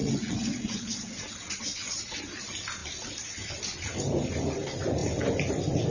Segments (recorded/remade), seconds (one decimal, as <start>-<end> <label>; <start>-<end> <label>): 0.0-2.2 remade; 2.2-5.9 recorded